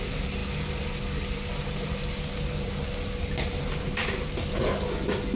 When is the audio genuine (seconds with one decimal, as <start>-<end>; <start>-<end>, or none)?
0.0-5.4